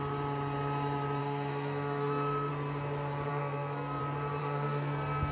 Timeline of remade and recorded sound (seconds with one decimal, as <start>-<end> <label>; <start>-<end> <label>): 0.0-1.2 recorded; 1.2-2.5 remade; 2.5-3.3 recorded; 3.3-4.0 remade; 4.0-4.4 recorded; 4.4-5.3 remade